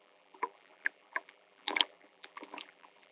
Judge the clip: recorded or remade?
remade